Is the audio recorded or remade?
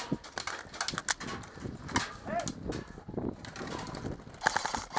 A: recorded